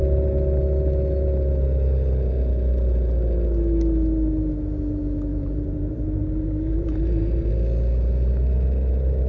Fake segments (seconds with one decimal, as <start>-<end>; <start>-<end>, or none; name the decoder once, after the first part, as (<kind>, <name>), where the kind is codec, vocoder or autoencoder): 5.3-7.5 (vocoder, BigVGAN v2)